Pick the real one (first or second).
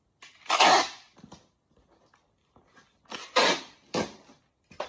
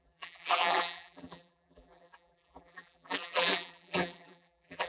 first